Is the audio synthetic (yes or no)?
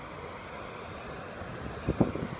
no